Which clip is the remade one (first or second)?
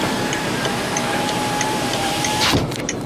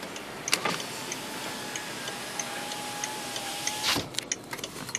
first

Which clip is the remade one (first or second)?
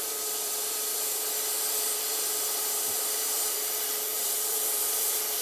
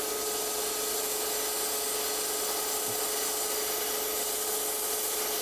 first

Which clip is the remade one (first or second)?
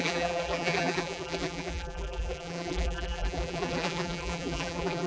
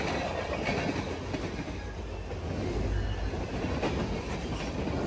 first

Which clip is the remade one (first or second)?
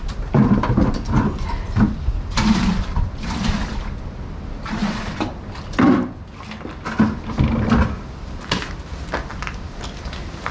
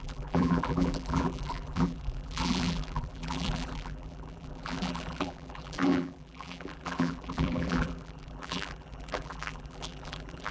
second